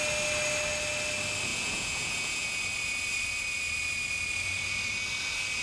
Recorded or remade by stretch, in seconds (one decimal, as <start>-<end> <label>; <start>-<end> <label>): 0.0-1.5 recorded; 1.5-2.6 remade; 2.6-5.6 recorded